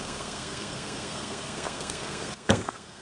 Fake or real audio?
fake